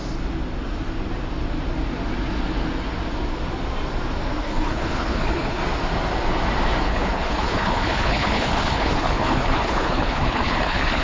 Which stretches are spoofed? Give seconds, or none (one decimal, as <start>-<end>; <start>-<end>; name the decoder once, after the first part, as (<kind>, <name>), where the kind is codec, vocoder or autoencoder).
4.4-5.6 (codec, HILCodec); 6.8-11.0